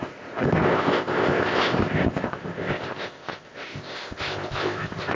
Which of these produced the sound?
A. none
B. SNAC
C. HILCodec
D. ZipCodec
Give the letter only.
D